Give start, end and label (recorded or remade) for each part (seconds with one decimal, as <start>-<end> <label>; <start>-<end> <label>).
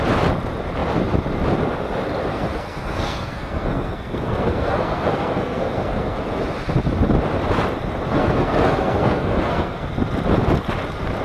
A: 0.0-2.3 recorded; 2.3-6.4 remade; 6.4-8.1 recorded; 8.1-9.9 remade; 9.9-11.2 recorded